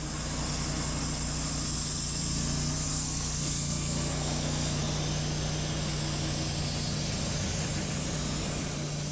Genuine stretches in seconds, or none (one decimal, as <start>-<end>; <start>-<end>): 0.0-2.9; 4.8-9.1